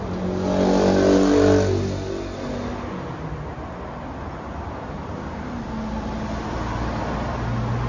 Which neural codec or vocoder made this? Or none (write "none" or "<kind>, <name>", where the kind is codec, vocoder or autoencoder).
none